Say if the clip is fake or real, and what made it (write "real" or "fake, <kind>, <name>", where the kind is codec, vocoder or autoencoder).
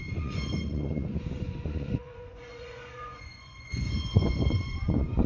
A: fake, vocoder, Vocos